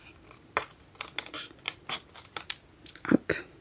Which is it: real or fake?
real